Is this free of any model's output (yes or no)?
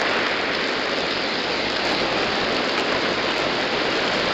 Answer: yes